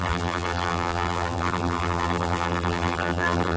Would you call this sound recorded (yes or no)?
no